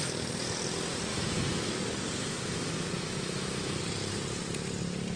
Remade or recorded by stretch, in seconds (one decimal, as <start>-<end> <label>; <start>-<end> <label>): 0.0-1.1 recorded; 1.1-1.7 remade; 1.7-2.2 recorded; 2.2-3.8 remade; 3.8-5.2 recorded